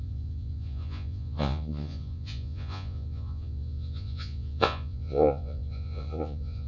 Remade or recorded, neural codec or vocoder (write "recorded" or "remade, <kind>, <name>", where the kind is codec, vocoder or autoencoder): remade, vocoder, Vocos